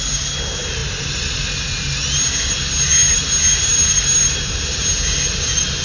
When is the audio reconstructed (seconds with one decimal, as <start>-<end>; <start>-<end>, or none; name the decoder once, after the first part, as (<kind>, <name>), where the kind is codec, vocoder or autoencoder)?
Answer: none